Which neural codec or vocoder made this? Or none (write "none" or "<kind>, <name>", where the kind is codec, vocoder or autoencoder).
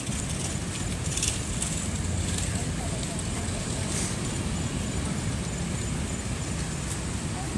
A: none